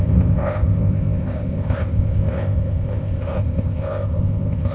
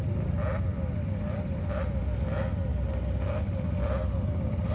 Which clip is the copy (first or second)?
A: first